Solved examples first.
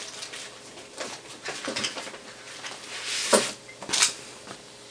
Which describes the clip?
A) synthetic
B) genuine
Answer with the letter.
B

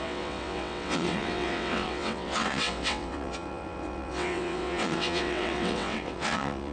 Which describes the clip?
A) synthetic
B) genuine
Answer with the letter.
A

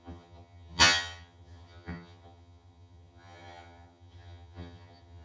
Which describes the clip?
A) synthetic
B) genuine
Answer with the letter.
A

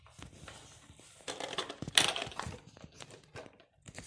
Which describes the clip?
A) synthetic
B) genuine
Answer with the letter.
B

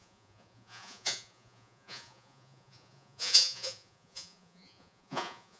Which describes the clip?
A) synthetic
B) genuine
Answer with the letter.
A